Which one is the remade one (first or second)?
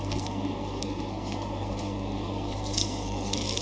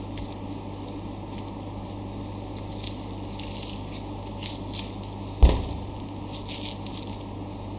first